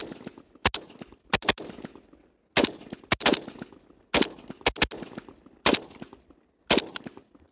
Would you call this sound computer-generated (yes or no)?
no